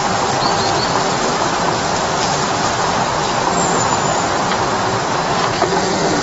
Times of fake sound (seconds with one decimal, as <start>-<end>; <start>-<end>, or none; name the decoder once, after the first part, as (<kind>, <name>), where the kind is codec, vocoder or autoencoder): none